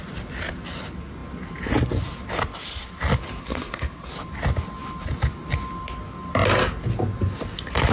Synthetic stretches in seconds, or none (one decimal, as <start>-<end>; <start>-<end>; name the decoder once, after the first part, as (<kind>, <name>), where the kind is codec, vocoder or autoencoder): 3.4-4.1 (codec, SNAC)